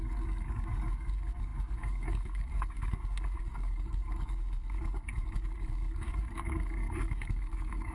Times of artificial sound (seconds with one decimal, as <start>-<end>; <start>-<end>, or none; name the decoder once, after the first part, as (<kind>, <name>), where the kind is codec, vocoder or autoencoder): 0.0-7.9 (codec, DAC)